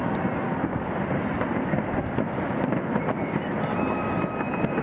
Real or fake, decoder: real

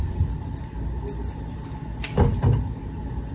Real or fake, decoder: real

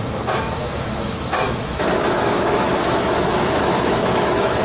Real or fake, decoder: fake, autoencoder, DAC-VAE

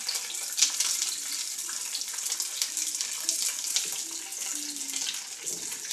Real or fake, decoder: real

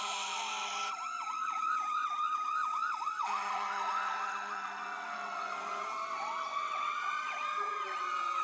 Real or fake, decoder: fake, vocoder, WaveNeXt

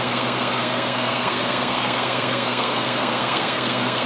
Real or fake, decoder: fake, codec, SNAC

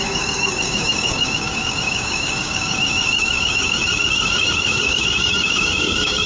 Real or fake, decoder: fake, codec, DAC